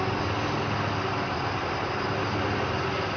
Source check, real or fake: real